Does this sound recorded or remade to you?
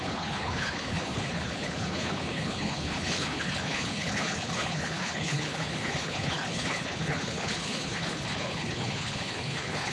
remade